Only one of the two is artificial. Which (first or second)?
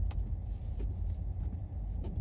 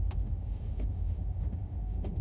second